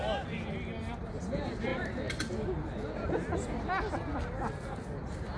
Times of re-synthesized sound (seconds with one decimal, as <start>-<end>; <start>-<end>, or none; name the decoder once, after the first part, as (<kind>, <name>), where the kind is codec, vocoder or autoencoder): none